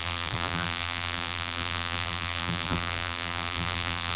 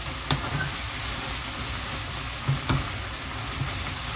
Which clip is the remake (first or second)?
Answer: first